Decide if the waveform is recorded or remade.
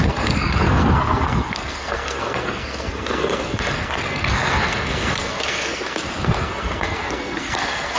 remade